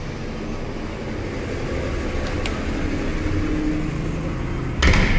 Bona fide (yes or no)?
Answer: yes